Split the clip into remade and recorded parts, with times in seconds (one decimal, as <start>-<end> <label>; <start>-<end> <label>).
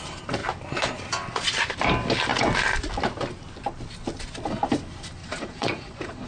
0.0-5.2 recorded; 5.2-6.3 remade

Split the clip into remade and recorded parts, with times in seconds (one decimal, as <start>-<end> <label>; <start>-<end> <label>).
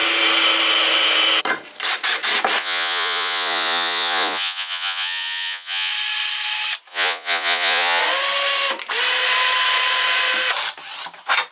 0.0-2.6 recorded; 2.6-5.9 remade; 5.9-6.9 recorded; 6.9-8.0 remade; 8.0-11.5 recorded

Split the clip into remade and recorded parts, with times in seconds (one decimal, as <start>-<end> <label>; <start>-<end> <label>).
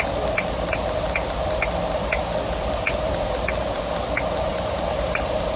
0.0-4.5 recorded; 4.5-5.6 remade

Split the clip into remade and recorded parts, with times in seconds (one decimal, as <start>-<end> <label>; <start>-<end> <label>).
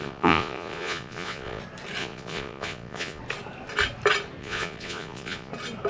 0.0-1.6 remade; 1.6-2.0 recorded; 2.0-3.2 remade; 3.2-4.4 recorded; 4.4-5.5 remade; 5.5-5.9 recorded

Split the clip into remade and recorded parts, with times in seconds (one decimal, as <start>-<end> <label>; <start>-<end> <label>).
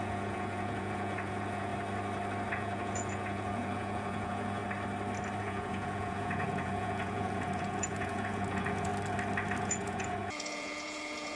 0.0-1.7 remade; 1.7-2.5 recorded; 2.5-4.6 remade; 4.6-5.4 recorded; 5.4-8.9 remade; 8.9-9.6 recorded; 9.6-11.4 remade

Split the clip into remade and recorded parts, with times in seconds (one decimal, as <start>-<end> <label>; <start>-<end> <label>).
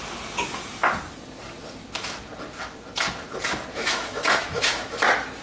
0.0-3.7 recorded; 3.7-5.0 remade; 5.0-5.4 recorded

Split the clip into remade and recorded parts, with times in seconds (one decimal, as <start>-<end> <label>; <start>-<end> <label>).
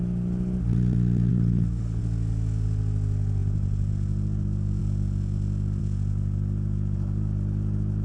0.0-1.3 recorded; 1.3-2.0 remade; 2.0-8.0 recorded